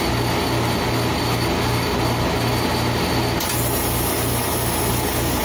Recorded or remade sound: recorded